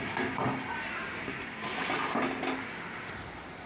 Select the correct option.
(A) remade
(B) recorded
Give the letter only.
B